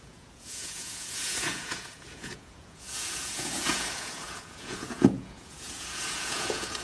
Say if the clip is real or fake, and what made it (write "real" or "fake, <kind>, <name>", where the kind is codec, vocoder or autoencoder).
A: fake, vocoder, Vocos